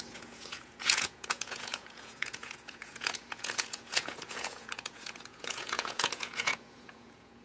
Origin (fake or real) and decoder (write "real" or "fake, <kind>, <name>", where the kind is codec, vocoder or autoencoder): fake, vocoder, Vocos